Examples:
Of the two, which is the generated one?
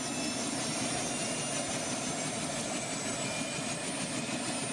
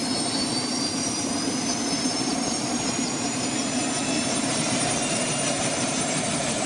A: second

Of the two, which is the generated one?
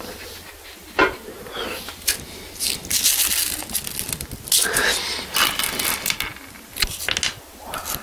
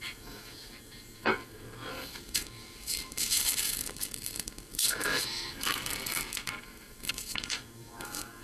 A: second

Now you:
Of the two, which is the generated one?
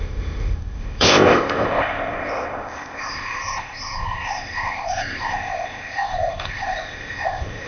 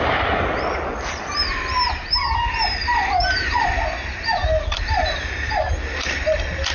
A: first